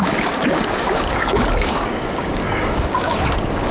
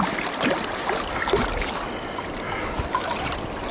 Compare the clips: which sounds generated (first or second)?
first